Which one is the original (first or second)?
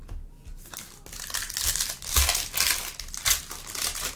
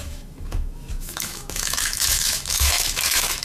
first